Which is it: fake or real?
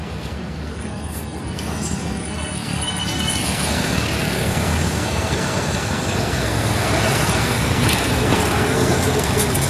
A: fake